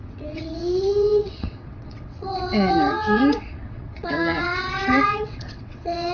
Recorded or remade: remade